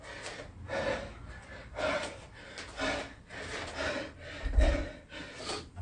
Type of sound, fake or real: real